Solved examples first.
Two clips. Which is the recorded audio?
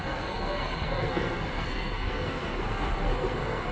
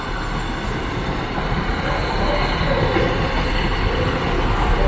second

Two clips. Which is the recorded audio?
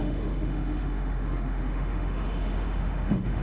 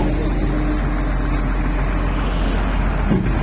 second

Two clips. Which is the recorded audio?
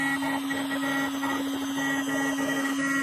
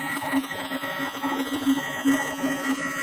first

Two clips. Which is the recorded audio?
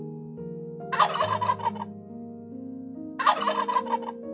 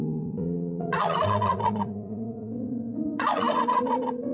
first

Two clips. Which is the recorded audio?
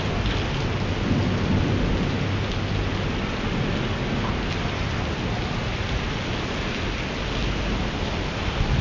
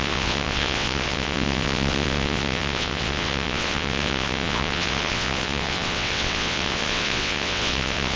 first